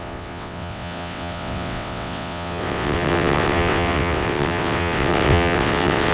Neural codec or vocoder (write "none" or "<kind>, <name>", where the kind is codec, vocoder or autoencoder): vocoder, WaveNeXt